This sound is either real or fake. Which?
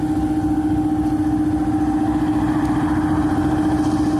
real